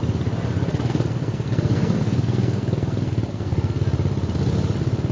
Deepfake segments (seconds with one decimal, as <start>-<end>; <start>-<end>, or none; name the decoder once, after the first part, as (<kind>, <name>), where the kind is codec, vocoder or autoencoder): 0.7-3.8 (codec, SNAC)